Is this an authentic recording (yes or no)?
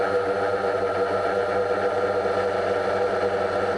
yes